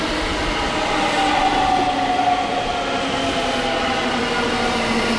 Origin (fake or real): real